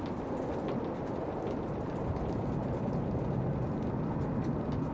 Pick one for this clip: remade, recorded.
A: recorded